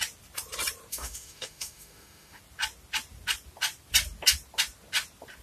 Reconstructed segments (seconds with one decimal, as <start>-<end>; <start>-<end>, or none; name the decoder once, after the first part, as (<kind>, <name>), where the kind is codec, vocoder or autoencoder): 0.9-2.4 (autoencoder, DAC-VAE)